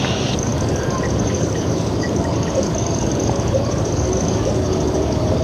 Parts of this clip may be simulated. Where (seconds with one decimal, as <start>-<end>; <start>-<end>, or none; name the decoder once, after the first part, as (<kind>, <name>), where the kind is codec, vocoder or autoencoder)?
0.0-5.4 (codec, DAC)